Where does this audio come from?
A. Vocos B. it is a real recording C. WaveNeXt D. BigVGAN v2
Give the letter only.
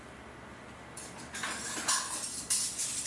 B